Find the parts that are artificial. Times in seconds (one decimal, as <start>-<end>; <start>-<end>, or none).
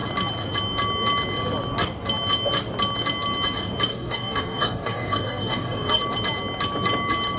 3.9-6.0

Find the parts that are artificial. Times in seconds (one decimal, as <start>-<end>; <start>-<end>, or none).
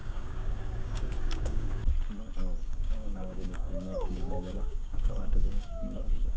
0.0-1.8; 2.6-6.4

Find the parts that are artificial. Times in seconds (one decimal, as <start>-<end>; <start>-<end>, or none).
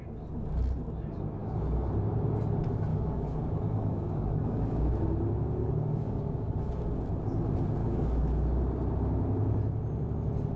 1.4-1.9; 2.9-4.9; 5.6-6.5; 7.8-8.6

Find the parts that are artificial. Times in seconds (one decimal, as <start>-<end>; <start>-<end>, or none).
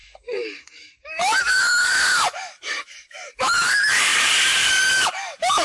0.0-5.6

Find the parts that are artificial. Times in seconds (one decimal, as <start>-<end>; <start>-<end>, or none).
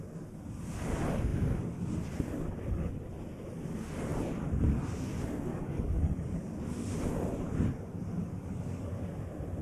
5.5-6.5; 8.2-8.9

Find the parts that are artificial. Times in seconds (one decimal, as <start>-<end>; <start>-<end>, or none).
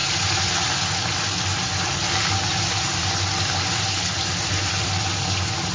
none